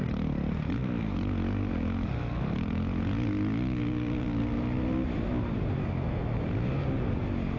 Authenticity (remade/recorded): recorded